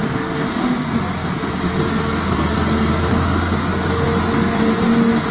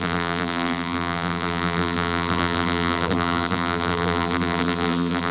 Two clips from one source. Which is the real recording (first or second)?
first